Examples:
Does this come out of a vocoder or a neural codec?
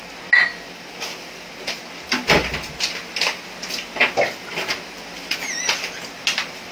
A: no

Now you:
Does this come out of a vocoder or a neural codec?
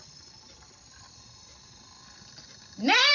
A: yes